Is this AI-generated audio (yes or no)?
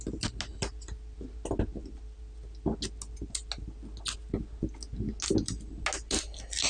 no